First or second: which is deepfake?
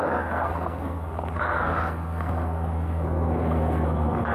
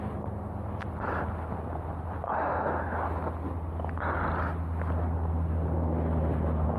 first